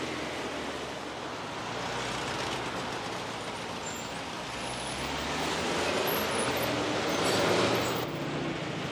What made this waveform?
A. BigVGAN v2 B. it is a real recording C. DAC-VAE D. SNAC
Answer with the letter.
B